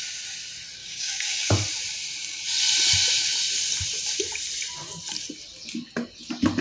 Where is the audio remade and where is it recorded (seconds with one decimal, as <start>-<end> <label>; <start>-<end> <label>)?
0.0-0.8 recorded; 0.8-1.5 remade; 1.5-6.6 recorded